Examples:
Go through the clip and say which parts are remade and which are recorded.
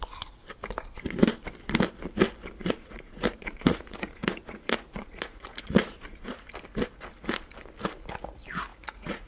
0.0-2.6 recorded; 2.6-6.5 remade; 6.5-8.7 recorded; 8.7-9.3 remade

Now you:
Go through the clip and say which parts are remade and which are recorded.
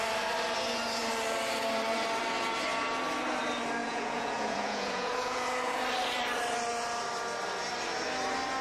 0.0-3.8 recorded; 3.8-5.8 remade; 5.8-8.6 recorded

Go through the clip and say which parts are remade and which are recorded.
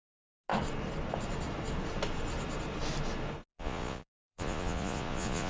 0.0-3.5 recorded; 3.5-5.5 remade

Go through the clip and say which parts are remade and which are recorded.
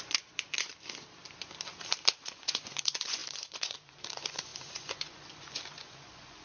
0.0-0.7 remade; 0.7-2.2 recorded; 2.2-6.4 remade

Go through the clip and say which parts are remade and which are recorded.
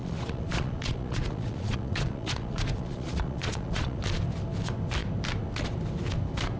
0.0-4.0 remade; 4.0-6.6 recorded